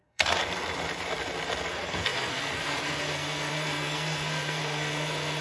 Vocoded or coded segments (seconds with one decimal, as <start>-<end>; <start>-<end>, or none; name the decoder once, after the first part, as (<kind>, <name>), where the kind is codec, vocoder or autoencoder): 0.0-0.4 (codec, SNAC); 1.7-5.4